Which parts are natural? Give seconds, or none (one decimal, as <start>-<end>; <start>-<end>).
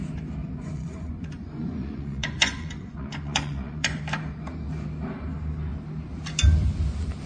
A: 0.0-0.4; 4.0-7.3